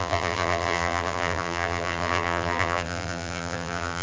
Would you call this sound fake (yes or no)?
yes